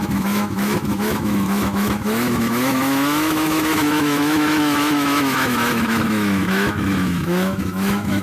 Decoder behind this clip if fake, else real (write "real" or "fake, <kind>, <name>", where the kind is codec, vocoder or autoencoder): fake, autoencoder, DAC-VAE